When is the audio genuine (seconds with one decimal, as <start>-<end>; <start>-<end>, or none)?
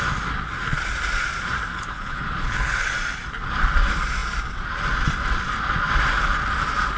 0.0-1.7; 2.9-7.0